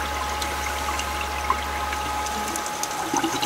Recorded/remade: recorded